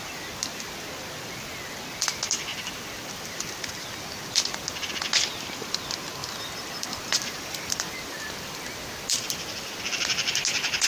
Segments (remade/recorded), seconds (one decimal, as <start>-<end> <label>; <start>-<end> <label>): 0.0-2.5 recorded; 2.5-4.9 remade; 4.9-6.2 recorded; 6.2-9.8 remade; 9.8-10.9 recorded